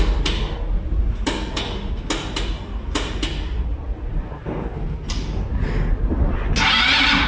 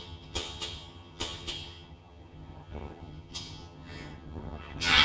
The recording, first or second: first